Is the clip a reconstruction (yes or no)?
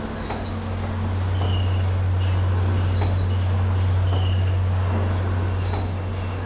no